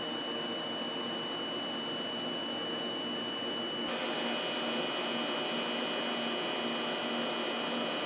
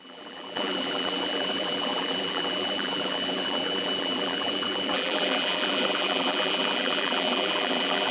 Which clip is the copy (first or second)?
second